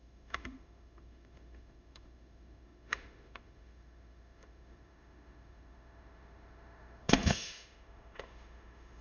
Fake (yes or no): yes